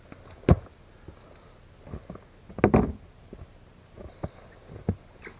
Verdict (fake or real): real